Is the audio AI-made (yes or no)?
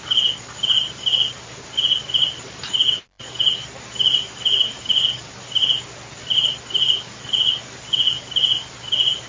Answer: no